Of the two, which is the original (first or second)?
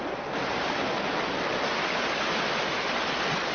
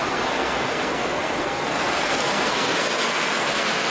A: first